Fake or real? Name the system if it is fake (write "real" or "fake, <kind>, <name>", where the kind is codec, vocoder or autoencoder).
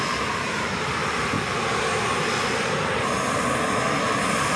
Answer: real